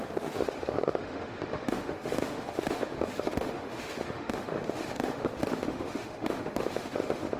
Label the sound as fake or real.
fake